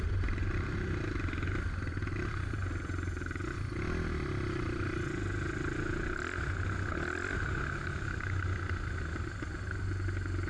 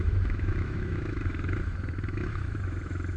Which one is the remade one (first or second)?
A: second